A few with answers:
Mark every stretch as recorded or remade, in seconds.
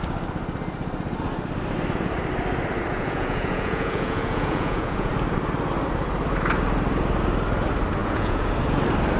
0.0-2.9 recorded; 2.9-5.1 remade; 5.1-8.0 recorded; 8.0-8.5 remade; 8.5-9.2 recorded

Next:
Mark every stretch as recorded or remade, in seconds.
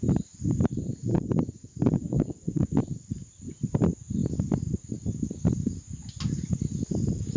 0.0-1.1 recorded; 1.1-2.8 remade; 2.8-7.4 recorded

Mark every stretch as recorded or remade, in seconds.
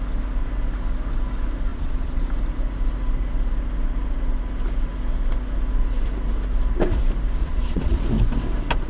0.0-1.7 recorded; 1.7-2.3 remade; 2.3-7.4 recorded; 7.4-8.0 remade; 8.0-8.9 recorded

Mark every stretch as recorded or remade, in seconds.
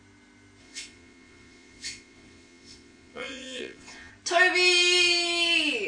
0.0-0.6 recorded; 0.6-4.1 remade; 4.1-5.9 recorded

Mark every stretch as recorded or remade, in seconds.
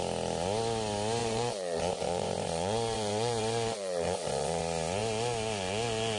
0.0-1.2 recorded; 1.2-4.6 remade; 4.6-6.2 recorded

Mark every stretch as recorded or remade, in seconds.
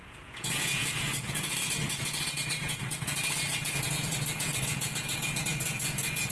0.0-6.3 remade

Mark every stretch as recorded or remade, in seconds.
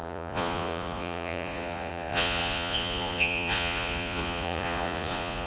0.0-5.5 remade